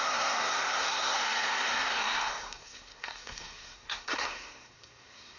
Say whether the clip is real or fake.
fake